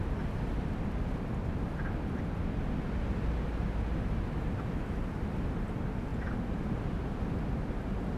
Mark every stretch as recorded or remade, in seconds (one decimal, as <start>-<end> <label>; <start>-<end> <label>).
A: 0.0-8.2 recorded